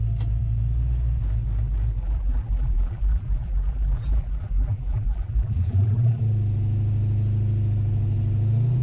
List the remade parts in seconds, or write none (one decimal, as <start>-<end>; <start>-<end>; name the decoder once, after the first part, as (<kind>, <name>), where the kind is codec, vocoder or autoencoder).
2.0-6.2 (vocoder, BigVGAN v2)